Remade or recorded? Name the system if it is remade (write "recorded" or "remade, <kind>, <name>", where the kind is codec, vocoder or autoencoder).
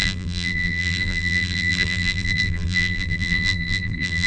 remade, vocoder, BigVGAN v2